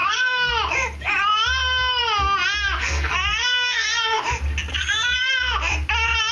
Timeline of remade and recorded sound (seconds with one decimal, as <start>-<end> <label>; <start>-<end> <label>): 0.0-0.5 remade; 0.5-2.8 recorded; 2.8-4.2 remade; 4.2-4.7 recorded; 4.7-5.3 remade; 5.3-6.3 recorded